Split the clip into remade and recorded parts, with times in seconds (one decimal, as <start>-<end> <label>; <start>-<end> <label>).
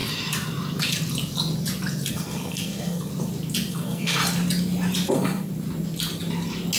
0.0-2.1 recorded; 2.1-3.1 remade; 3.1-3.7 recorded; 3.7-4.2 remade; 4.2-5.1 recorded; 5.1-5.5 remade; 5.5-6.8 recorded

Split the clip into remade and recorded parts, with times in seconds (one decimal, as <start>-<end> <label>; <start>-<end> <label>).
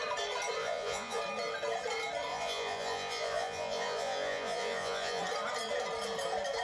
0.0-0.6 recorded; 0.6-1.2 remade; 1.2-2.3 recorded; 2.3-5.2 remade; 5.2-6.6 recorded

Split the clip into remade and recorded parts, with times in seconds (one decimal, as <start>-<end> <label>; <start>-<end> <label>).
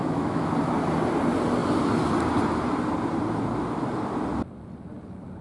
0.0-0.5 remade; 0.5-5.4 recorded